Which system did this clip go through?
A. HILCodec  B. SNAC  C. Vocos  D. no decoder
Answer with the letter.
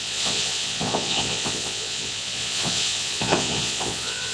C